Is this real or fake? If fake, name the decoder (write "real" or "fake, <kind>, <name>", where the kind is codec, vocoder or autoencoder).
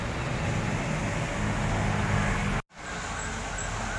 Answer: real